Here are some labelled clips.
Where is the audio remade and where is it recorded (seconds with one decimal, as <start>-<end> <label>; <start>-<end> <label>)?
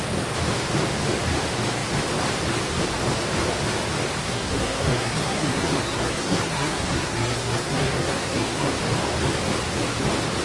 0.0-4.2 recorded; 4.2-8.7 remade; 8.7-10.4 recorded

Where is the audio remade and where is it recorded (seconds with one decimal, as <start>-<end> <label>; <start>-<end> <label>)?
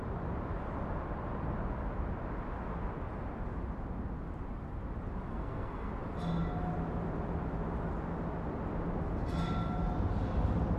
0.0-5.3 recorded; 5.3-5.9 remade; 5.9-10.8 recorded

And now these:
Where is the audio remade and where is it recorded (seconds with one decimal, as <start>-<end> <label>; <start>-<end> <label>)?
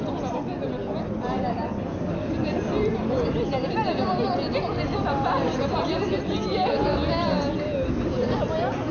0.0-8.9 recorded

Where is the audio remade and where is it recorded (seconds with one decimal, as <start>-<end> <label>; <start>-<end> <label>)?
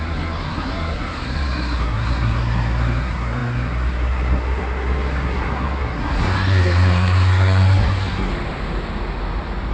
0.0-8.3 remade; 8.3-9.7 recorded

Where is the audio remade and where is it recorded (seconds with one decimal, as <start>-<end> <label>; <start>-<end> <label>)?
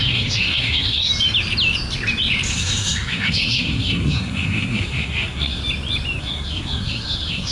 0.0-1.1 remade; 1.1-2.5 recorded; 2.5-5.6 remade; 5.6-6.2 recorded; 6.2-7.5 remade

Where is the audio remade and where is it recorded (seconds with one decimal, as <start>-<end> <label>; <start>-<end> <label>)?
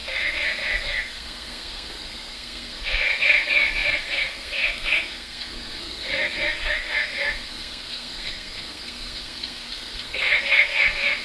0.0-11.2 remade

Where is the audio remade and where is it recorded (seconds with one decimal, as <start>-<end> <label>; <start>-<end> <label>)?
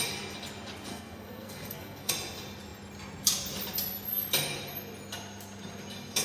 0.0-0.9 recorded; 0.9-2.1 remade; 2.1-6.2 recorded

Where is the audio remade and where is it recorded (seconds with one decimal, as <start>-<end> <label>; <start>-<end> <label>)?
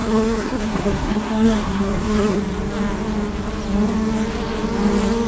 0.0-2.4 remade; 2.4-5.3 recorded